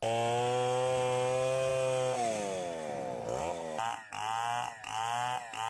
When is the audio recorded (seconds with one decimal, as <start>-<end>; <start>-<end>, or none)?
0.0-5.7